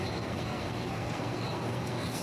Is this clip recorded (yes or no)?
no